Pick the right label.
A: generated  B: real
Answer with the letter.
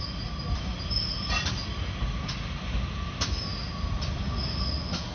B